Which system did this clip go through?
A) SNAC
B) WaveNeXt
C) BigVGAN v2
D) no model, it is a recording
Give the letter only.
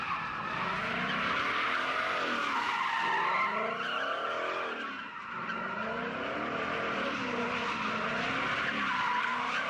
D